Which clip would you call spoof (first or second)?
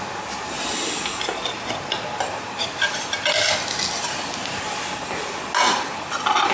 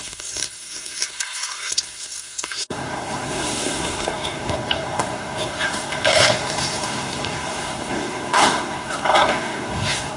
second